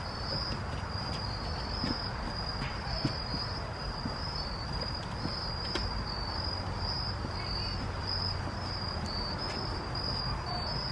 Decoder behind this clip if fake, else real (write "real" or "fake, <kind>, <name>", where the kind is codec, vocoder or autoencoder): real